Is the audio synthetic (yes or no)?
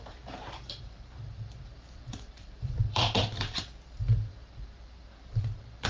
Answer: yes